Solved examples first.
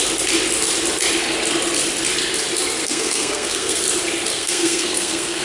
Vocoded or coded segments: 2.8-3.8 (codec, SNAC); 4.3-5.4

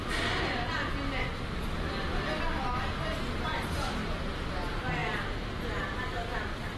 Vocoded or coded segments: 3.1-4.0 (vocoder, BigVGAN v2); 5.0-5.6

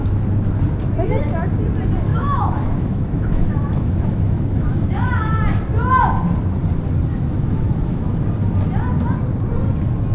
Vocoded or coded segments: 2.1-5.4 (autoencoder, DAC-VAE); 7.1-8.2

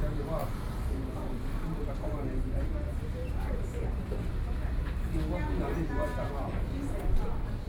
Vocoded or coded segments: 0.4-4.3 (vocoder, BigVGAN v2)

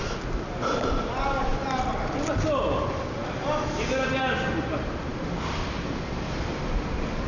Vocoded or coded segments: none

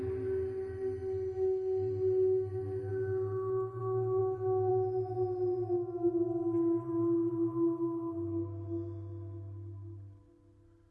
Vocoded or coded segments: none